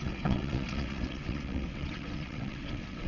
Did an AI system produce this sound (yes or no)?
yes